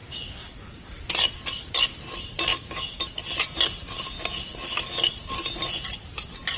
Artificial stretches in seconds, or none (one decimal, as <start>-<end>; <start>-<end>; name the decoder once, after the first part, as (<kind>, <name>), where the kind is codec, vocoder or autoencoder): 0.0-0.9 (codec, DAC); 2.5-3.0